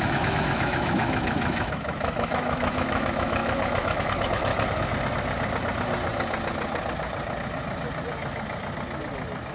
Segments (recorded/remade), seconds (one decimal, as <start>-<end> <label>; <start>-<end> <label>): 0.0-4.5 remade; 4.5-9.5 recorded